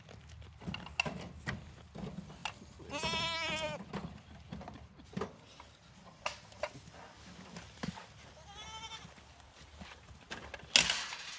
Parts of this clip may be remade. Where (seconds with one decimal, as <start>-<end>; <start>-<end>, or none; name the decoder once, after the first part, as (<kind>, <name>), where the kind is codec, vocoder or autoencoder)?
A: none